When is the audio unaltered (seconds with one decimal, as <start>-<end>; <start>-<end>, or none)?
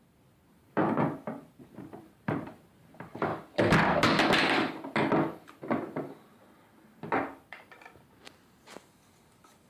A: 3.3-7.5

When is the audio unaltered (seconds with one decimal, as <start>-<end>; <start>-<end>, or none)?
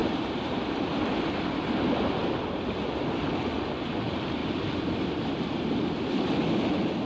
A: 2.4-4.4; 6.6-7.1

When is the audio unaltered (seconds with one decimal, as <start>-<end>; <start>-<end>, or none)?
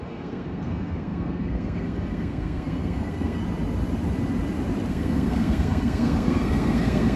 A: 3.4-4.9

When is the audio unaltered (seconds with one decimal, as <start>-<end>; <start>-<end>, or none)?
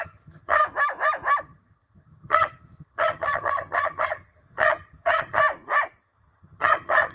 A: 0.6-1.4; 5.4-6.0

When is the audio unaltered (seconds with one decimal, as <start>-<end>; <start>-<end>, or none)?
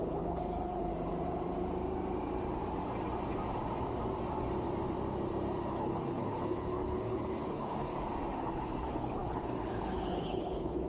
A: 0.9-5.7; 7.9-8.4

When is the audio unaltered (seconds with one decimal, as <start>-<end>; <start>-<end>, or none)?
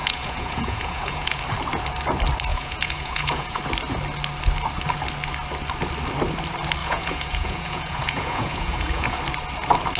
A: 1.4-2.5; 3.6-6.8; 9.2-10.0